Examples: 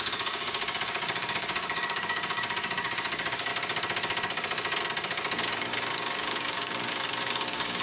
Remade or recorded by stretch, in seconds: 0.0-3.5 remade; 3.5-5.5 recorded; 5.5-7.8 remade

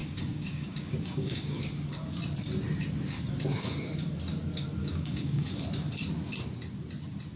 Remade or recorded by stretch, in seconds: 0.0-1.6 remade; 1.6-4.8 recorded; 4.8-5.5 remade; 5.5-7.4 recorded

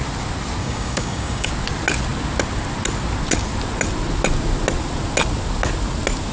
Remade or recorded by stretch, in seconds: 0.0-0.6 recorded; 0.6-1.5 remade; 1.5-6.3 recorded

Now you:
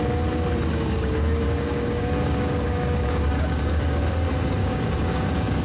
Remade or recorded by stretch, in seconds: 0.0-0.7 recorded; 0.7-4.1 remade; 4.1-4.6 recorded; 4.6-5.6 remade